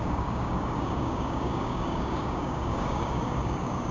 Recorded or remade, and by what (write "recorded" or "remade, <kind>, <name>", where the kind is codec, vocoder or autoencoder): remade, codec, DAC